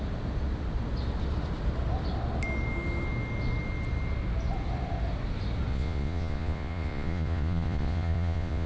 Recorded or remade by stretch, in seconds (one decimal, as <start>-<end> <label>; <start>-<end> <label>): 0.0-5.7 recorded; 5.7-8.7 remade